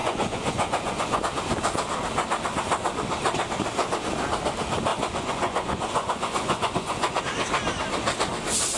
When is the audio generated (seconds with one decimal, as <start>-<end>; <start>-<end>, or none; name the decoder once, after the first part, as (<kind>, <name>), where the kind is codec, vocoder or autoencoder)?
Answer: 0.0-1.2 (vocoder, Vocos); 4.9-7.2